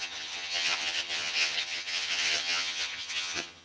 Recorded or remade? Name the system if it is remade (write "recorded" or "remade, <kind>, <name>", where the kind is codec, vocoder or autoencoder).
remade, vocoder, HiFi-GAN